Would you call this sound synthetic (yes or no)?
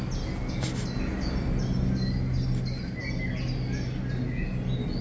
no